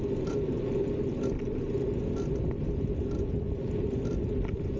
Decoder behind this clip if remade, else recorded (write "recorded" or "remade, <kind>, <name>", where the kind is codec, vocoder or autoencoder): recorded